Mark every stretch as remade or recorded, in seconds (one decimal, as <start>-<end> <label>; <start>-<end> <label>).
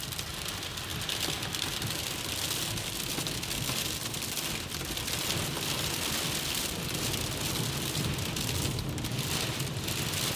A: 0.0-10.4 recorded